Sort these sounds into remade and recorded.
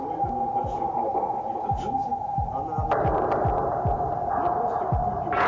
recorded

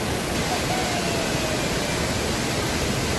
recorded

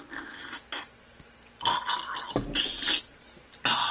recorded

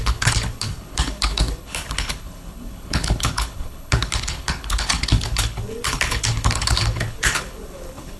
remade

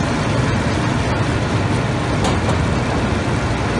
recorded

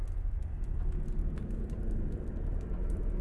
recorded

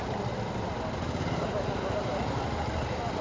recorded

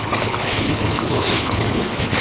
remade